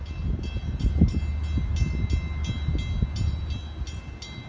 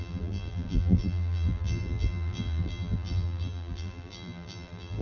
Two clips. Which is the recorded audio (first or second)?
first